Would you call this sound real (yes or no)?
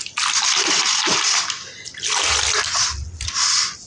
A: yes